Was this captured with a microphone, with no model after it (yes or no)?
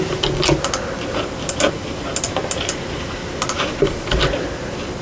yes